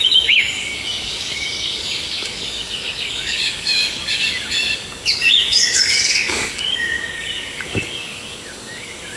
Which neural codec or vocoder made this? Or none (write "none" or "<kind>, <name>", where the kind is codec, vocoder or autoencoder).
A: codec, DAC